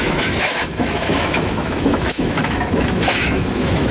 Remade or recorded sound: remade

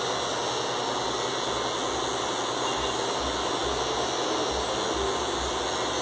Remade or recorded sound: recorded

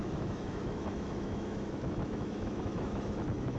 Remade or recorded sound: remade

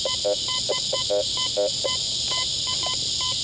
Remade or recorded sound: recorded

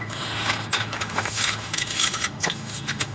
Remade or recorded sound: remade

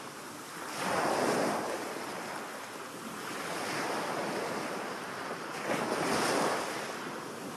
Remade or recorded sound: recorded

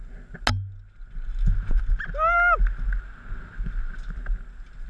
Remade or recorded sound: recorded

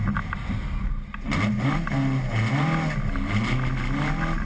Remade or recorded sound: recorded